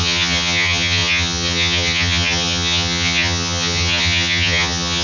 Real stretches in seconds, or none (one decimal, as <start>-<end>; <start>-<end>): none